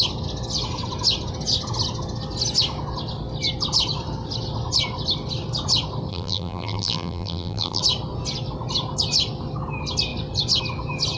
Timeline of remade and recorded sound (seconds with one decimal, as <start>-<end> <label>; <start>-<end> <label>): 0.0-6.1 recorded; 6.1-7.8 remade; 7.8-11.2 recorded